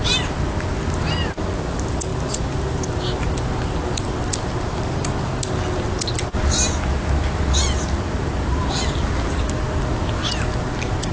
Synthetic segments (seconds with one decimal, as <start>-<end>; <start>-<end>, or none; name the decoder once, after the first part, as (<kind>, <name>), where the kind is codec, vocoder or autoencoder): none